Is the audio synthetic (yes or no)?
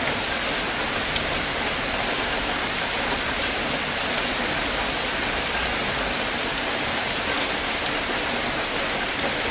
no